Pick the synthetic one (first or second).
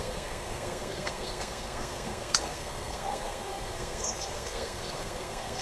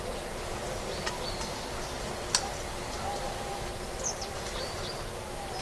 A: first